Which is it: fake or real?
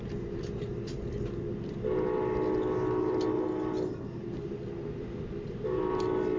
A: real